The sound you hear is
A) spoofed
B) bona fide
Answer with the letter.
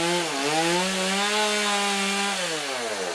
B